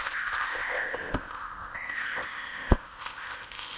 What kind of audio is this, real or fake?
fake